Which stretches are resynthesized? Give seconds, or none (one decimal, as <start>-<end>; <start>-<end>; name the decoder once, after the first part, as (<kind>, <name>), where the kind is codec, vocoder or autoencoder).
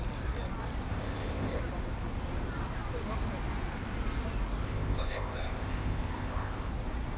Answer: 0.9-1.6 (codec, ZipCodec); 4.6-6.7